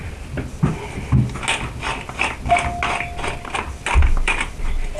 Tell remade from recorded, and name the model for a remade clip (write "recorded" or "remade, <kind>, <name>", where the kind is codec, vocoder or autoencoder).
recorded